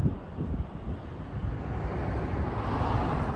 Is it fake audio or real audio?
real